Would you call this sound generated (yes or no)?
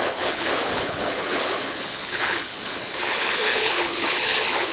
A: yes